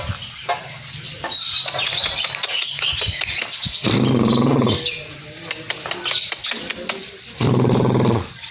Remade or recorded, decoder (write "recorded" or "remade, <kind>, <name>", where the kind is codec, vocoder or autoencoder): recorded